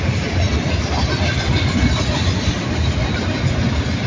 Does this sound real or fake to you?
real